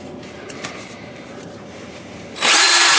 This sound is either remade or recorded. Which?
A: remade